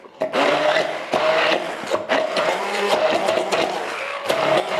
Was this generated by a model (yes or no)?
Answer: yes